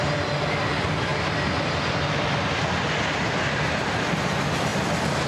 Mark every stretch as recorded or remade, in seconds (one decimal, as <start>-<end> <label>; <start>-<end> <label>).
0.0-5.3 recorded